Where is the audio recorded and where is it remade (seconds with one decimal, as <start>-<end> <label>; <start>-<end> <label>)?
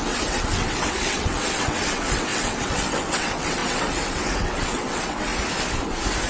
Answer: 0.0-5.3 remade; 5.3-6.3 recorded